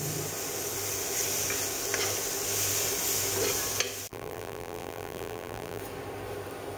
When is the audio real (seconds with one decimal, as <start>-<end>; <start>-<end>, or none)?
0.0-4.1; 5.8-6.8